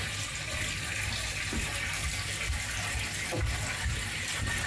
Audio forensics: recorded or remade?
recorded